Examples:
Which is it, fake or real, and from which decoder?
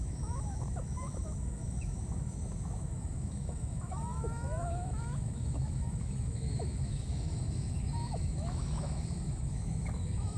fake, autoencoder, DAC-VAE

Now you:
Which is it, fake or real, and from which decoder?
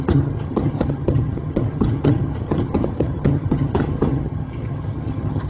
fake, vocoder, HiFi-GAN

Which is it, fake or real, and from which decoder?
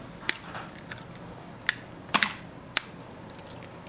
real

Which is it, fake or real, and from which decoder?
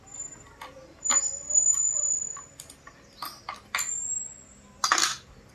real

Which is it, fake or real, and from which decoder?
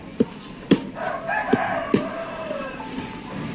real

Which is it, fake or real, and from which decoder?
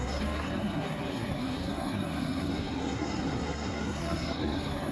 fake, codec, SNAC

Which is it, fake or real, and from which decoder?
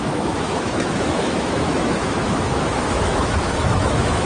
fake, autoencoder, DAC-VAE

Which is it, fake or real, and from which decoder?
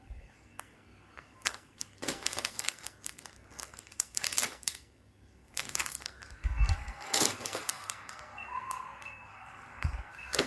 fake, codec, SNAC